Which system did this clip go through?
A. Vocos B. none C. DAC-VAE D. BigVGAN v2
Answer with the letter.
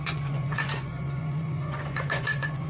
A